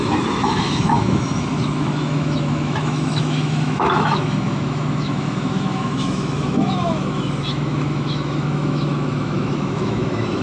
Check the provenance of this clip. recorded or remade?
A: remade